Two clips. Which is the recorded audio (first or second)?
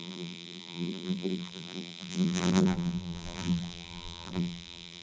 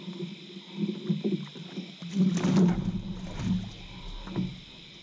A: second